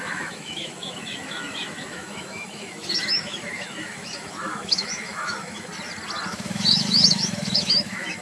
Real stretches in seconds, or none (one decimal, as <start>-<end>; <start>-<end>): 5.7-6.3